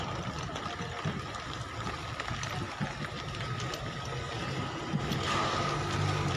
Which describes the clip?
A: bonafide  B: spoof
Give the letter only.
A